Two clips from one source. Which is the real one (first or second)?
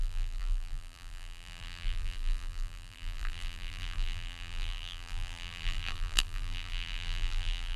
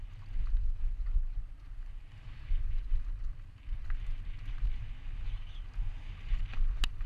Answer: second